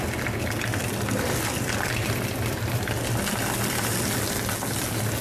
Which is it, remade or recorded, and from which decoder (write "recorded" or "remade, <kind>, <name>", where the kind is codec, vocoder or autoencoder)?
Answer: recorded